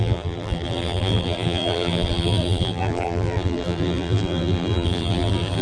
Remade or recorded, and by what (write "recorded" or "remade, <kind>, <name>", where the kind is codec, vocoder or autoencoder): remade, vocoder, BigVGAN v2